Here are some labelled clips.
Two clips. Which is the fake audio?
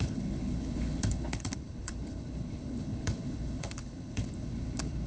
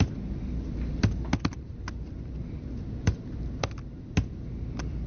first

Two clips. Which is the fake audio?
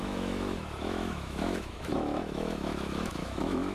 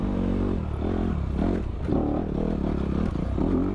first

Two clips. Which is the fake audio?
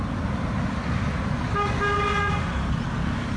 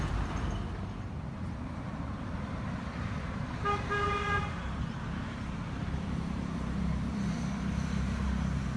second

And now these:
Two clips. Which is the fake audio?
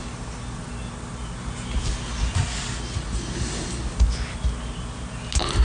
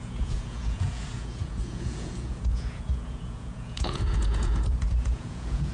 second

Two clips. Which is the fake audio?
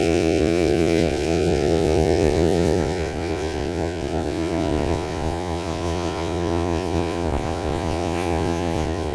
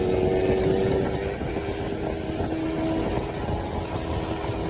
first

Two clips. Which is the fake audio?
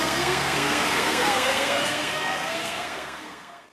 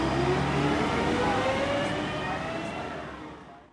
first